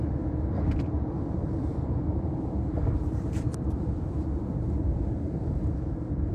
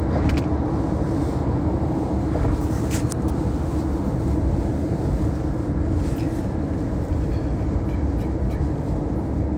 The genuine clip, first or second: second